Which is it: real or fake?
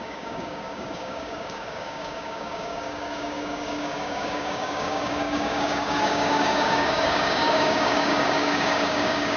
fake